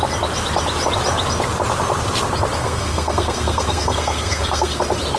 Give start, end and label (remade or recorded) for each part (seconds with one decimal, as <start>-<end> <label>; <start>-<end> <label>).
0.0-2.6 recorded; 2.6-4.8 remade; 4.8-5.2 recorded